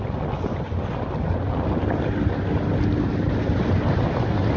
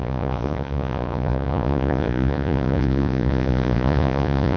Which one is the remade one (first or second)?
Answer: second